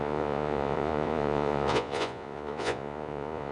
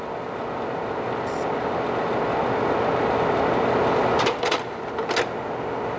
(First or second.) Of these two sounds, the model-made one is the first